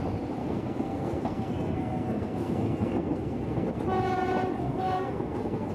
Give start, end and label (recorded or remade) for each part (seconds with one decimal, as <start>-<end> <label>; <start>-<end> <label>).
0.0-0.4 recorded; 0.4-3.8 remade; 3.8-4.6 recorded; 4.6-5.7 remade